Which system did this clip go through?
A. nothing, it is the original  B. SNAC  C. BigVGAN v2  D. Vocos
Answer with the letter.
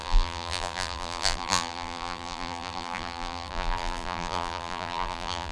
C